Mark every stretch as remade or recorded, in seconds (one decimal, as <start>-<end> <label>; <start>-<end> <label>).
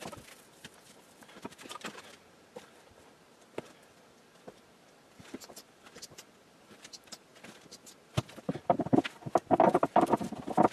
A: 0.0-7.3 remade; 7.3-9.7 recorded; 9.7-10.7 remade